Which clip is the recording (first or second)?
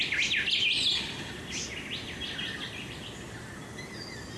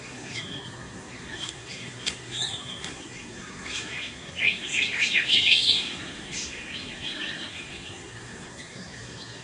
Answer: first